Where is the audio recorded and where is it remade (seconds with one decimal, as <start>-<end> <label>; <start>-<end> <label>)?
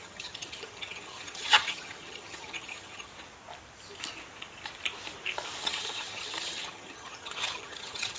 0.0-3.1 remade; 3.1-5.6 recorded; 5.6-8.2 remade